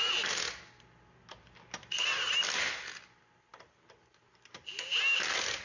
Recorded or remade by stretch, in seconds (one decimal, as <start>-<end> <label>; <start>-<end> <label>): 0.0-5.6 recorded